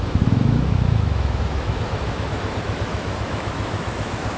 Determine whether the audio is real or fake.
fake